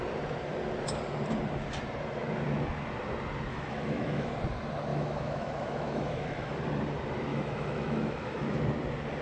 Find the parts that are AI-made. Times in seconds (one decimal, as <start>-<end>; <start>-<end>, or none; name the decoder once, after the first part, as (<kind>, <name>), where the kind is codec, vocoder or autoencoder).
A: 3.5-4.3 (autoencoder, DAC-VAE); 4.9-6.6; 7.3-8.6